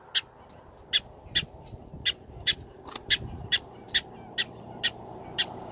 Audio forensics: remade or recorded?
recorded